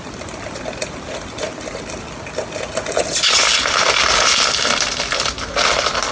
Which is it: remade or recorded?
recorded